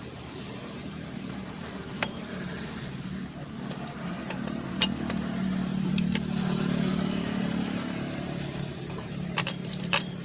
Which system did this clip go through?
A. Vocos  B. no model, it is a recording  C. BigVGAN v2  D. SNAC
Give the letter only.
C